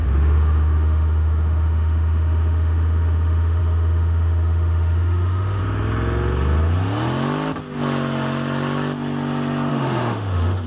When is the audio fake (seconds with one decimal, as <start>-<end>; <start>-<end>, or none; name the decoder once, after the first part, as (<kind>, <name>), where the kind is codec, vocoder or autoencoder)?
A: 0.0-5.6 (autoencoder, DAC-VAE); 9.7-10.7